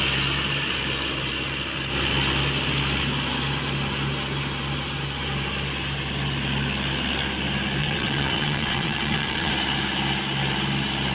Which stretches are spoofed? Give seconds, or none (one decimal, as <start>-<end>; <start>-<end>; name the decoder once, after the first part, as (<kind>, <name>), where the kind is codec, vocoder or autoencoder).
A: 7.8-9.5 (vocoder, WaveNeXt)